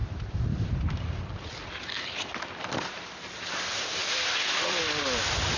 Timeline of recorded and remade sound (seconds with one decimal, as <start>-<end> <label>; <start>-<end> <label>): 0.0-5.6 remade